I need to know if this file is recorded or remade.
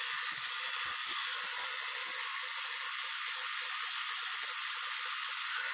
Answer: recorded